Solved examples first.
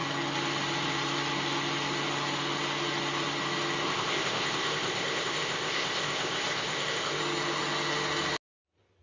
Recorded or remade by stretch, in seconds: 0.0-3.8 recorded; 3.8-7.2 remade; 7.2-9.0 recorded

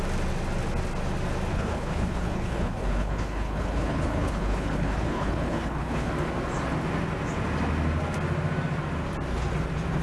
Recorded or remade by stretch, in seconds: 0.0-1.5 recorded; 1.5-6.1 remade; 6.1-10.0 recorded

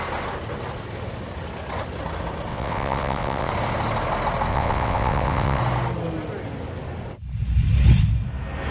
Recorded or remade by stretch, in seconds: 0.0-2.5 recorded; 2.5-3.5 remade; 3.5-4.5 recorded; 4.5-5.6 remade; 5.6-8.7 recorded